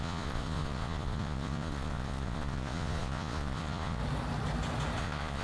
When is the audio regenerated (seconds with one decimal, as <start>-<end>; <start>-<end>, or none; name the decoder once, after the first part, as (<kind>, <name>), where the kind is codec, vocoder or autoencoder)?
0.0-4.0 (vocoder, Vocos); 5.0-5.4